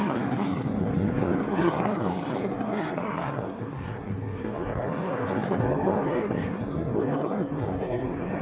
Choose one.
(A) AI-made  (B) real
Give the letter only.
A